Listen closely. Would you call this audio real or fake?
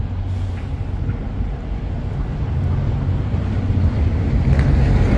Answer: real